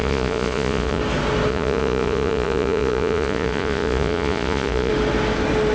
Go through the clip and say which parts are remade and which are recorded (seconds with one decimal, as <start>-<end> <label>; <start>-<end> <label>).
0.0-1.0 remade; 1.0-1.5 recorded; 1.5-4.9 remade; 4.9-5.7 recorded